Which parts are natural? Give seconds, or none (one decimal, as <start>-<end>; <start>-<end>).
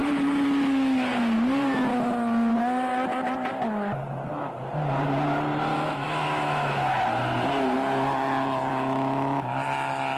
0.0-5.7; 7.0-8.7